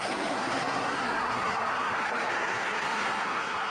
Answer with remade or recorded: remade